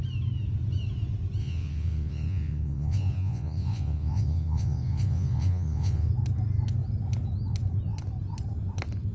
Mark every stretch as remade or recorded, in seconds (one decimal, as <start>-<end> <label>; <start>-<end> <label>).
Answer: 0.0-1.4 recorded; 1.4-6.1 remade; 6.1-9.1 recorded

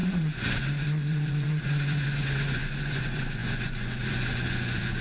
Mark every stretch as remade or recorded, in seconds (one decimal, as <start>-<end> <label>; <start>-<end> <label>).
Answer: 0.0-5.0 remade

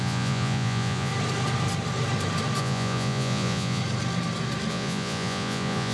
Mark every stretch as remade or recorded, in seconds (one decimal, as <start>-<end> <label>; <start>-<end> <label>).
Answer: 0.0-1.1 remade; 1.1-2.6 recorded; 2.6-3.8 remade; 3.8-4.7 recorded; 4.7-5.9 remade